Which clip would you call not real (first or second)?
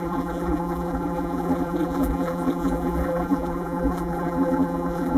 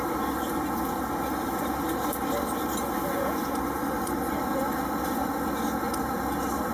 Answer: first